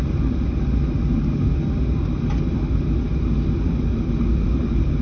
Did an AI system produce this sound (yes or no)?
no